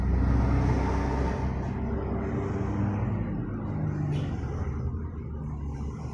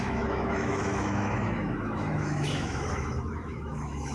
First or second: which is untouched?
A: first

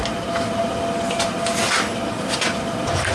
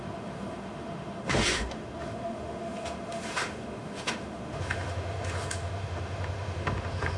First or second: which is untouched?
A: first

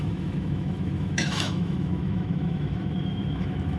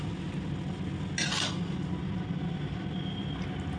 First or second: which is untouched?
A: second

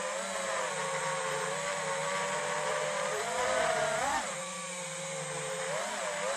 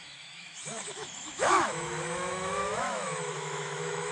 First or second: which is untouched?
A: first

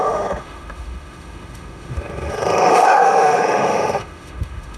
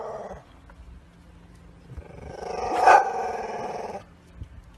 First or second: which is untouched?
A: second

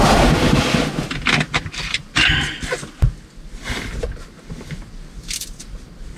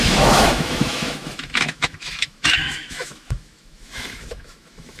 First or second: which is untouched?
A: first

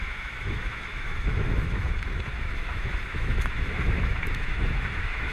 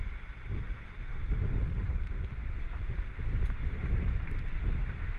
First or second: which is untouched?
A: second